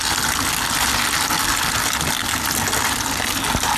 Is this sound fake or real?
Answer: real